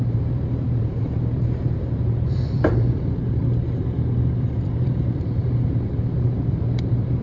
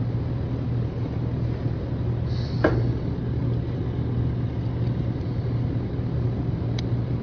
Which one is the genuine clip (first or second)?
second